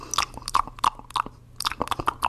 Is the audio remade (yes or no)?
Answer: no